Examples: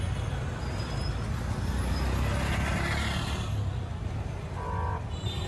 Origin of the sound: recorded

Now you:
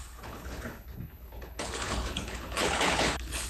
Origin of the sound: remade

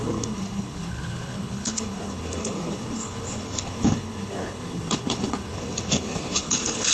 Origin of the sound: remade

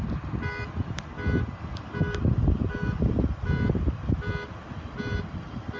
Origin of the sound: recorded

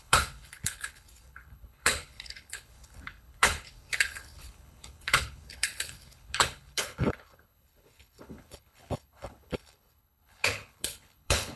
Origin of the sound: remade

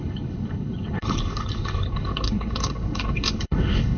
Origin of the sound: remade